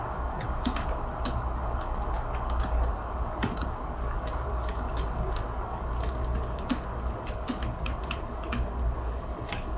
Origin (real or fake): fake